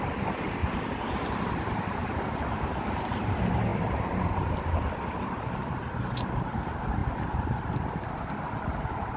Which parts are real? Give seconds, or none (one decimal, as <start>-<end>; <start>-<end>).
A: 0.0-0.6; 3.3-9.2